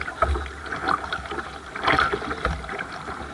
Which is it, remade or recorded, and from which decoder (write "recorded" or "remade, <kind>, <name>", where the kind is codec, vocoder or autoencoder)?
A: recorded